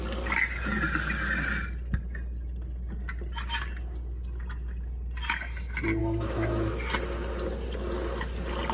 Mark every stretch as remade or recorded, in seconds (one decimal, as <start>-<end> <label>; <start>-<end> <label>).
0.0-6.0 recorded; 6.0-6.8 remade; 6.8-8.7 recorded